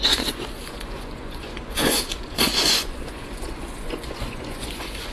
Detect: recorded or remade remade